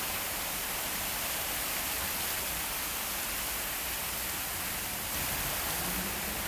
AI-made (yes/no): no